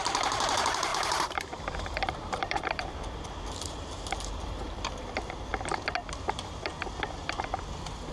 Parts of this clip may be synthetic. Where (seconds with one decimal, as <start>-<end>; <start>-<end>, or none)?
0.0-5.5; 6.2-6.7; 7.6-8.1